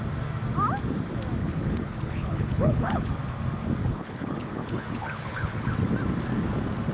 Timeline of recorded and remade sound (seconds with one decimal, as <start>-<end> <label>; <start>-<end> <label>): 0.0-1.4 recorded; 1.4-3.1 remade; 3.1-3.8 recorded; 3.8-5.7 remade; 5.7-6.9 recorded